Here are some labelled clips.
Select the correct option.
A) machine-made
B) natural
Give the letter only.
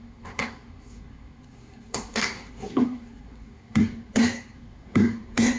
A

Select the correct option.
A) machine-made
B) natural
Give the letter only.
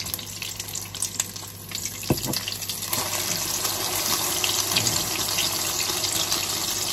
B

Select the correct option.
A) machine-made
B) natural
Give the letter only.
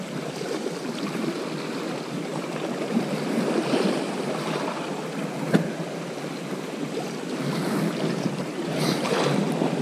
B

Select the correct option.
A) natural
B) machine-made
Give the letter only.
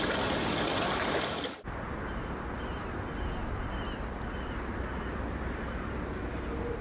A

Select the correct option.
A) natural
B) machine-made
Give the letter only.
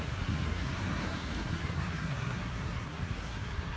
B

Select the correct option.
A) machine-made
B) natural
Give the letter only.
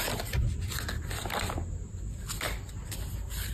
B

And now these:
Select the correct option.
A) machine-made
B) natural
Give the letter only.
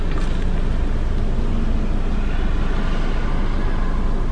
B